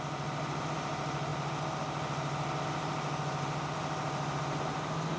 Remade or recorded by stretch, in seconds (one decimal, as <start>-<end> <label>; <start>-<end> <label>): 0.0-5.2 recorded